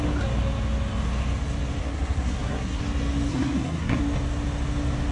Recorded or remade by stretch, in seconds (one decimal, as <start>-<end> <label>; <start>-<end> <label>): 0.0-1.8 recorded; 1.8-2.8 remade; 2.8-3.3 recorded; 3.3-4.0 remade; 4.0-5.1 recorded